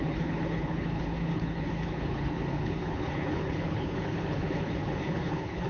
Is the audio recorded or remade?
remade